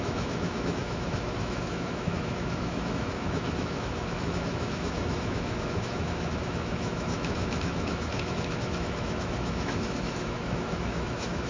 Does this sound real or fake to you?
fake